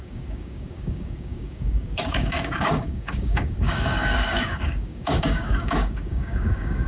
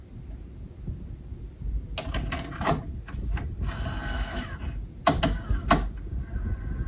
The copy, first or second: first